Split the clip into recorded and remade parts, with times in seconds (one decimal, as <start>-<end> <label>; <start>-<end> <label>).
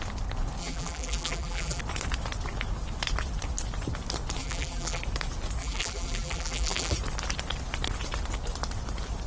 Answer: 0.0-0.6 recorded; 0.6-1.8 remade; 1.8-4.4 recorded; 4.4-5.0 remade; 5.0-5.6 recorded; 5.6-7.0 remade; 7.0-9.3 recorded